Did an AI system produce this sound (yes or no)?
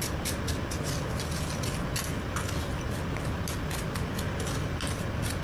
no